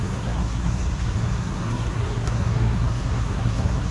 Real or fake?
fake